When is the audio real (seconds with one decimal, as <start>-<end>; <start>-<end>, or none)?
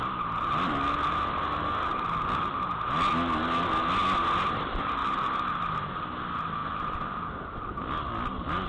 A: 0.0-8.7